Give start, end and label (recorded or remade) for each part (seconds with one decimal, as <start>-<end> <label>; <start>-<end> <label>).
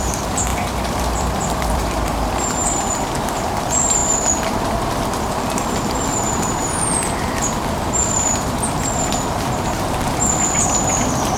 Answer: 0.0-11.4 remade